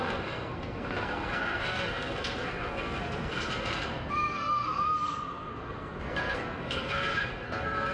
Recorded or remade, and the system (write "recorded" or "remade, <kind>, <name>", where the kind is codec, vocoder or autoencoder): remade, codec, SNAC